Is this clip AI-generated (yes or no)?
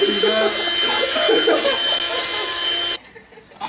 no